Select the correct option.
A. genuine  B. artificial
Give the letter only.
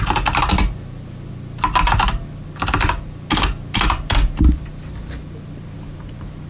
A